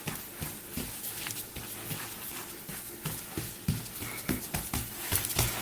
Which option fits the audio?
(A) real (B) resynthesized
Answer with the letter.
A